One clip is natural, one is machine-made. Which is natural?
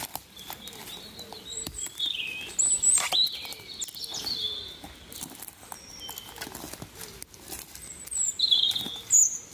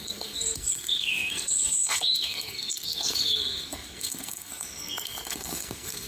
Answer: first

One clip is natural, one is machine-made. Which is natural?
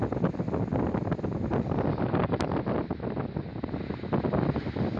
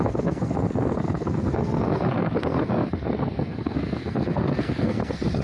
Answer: first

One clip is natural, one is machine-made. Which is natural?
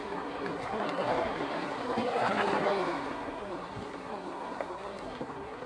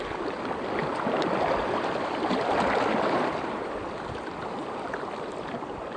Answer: second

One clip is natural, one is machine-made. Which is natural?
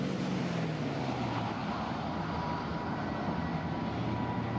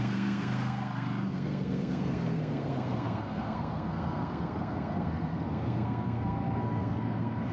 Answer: first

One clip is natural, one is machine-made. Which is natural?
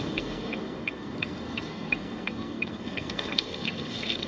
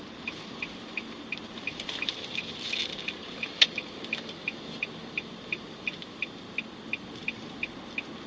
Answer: second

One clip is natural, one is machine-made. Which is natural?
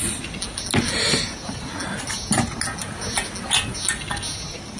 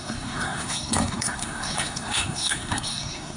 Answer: first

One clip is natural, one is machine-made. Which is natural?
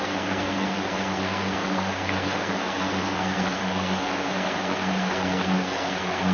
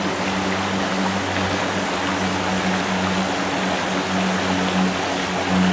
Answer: second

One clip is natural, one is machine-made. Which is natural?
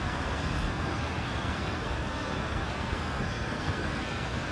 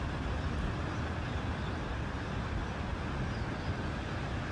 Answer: second